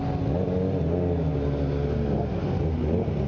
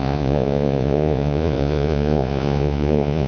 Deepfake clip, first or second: second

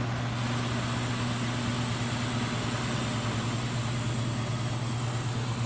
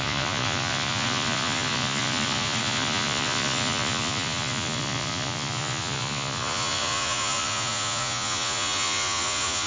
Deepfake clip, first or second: second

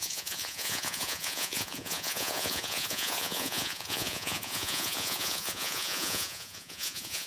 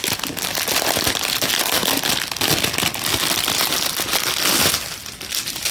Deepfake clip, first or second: first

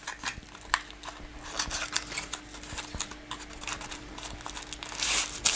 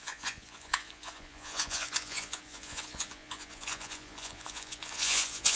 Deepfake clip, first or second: second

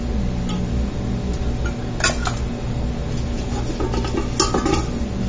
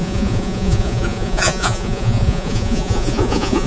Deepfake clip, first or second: second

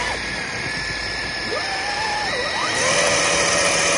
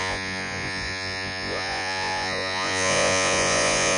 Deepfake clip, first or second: second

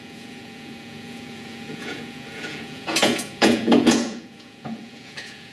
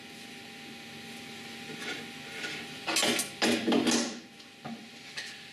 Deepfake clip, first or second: first